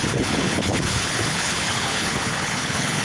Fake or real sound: fake